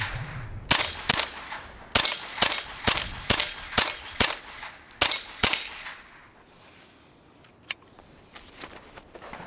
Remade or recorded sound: recorded